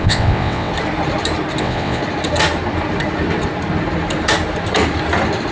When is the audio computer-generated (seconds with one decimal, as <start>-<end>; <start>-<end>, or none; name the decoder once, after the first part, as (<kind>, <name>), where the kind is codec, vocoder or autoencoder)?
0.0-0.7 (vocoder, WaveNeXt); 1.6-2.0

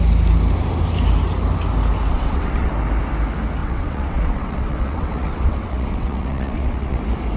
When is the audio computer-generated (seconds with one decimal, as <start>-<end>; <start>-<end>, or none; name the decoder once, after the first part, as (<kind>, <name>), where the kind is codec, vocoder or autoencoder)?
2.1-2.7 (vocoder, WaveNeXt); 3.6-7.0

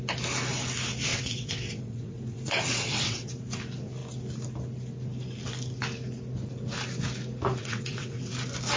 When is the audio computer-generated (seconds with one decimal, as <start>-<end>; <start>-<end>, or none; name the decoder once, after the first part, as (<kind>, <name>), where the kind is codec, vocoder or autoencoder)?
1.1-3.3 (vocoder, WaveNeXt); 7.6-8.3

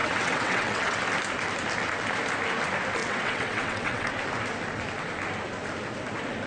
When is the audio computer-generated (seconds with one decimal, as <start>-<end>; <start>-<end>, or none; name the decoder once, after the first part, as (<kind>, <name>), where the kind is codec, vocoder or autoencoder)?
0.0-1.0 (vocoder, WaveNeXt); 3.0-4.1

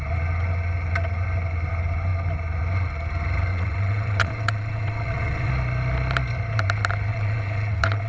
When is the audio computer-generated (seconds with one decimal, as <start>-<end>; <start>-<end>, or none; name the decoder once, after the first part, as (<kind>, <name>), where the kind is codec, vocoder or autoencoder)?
3.5-5.5 (vocoder, WaveNeXt); 7.1-8.1

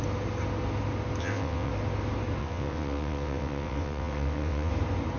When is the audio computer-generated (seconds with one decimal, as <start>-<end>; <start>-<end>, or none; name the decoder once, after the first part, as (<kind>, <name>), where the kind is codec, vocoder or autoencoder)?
1.2-1.7 (vocoder, WaveNeXt); 2.4-4.7

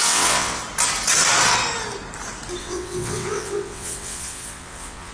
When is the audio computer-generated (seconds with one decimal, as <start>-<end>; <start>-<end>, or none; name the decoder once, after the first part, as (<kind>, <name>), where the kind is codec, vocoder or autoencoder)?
0.0-0.6 (vocoder, WaveNeXt); 2.6-5.1